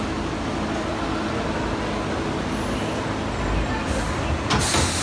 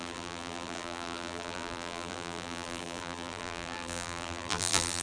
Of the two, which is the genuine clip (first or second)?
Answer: first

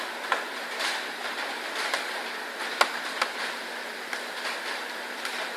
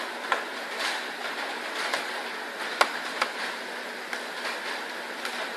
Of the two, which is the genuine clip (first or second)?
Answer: second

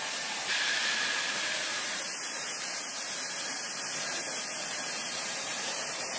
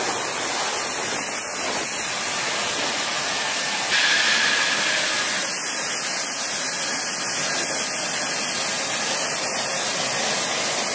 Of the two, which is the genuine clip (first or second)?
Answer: second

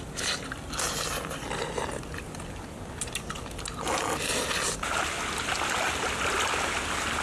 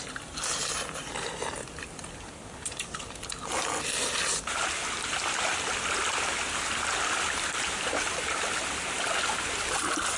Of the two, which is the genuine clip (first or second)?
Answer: first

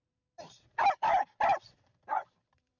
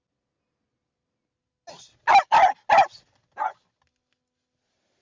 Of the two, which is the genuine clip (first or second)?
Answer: second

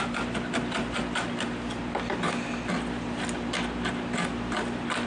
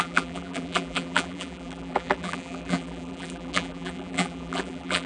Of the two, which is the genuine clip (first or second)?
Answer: first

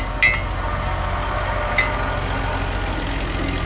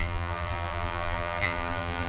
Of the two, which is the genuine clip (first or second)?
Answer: first